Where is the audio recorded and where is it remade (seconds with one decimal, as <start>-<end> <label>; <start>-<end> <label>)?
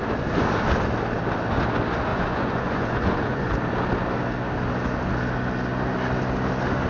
0.0-2.1 recorded; 2.1-3.5 remade; 3.5-6.9 recorded